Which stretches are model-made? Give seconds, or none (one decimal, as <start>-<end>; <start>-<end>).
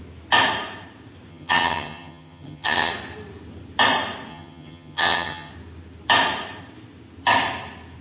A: 1.3-2.9; 4.3-5.5